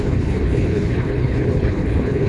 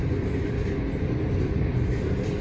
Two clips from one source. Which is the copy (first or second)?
first